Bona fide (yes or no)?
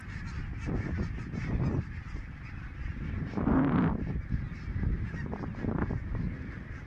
yes